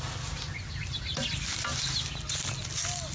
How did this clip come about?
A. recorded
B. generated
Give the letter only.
A